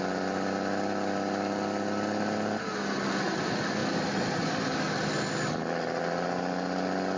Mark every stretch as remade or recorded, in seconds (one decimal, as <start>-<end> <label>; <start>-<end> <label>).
0.0-7.2 recorded